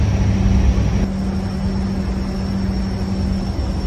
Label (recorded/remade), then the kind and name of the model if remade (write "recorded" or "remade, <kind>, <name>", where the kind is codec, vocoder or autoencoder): recorded